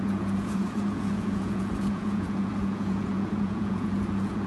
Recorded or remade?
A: remade